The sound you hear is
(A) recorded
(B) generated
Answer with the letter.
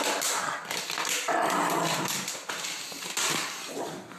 A